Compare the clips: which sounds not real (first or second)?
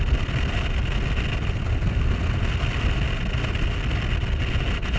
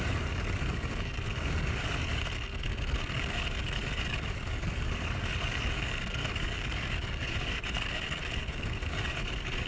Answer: second